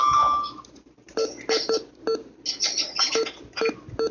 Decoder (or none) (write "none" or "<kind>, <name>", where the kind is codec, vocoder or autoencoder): none